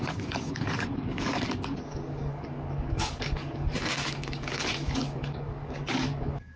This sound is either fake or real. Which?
fake